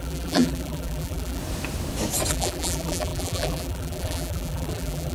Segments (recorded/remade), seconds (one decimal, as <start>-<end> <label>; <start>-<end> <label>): 0.0-1.4 remade; 1.4-2.3 recorded; 2.3-5.1 remade